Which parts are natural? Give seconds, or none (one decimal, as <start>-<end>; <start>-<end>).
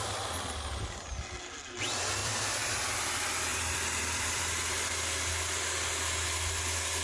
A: 0.0-2.2; 2.7-3.5; 4.4-7.0